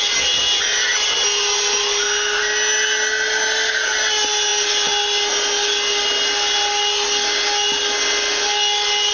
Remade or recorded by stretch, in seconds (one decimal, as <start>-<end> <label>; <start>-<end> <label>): 0.0-9.1 recorded